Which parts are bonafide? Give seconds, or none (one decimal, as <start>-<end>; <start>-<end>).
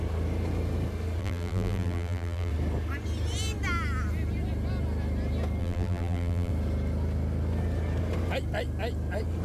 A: 0.0-1.2; 2.5-5.6; 6.5-9.4